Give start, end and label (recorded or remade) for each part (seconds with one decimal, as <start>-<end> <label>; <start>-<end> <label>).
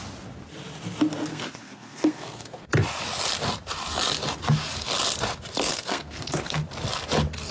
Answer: 0.0-1.3 recorded; 1.3-2.7 remade; 2.7-5.7 recorded; 5.7-6.6 remade; 6.6-7.5 recorded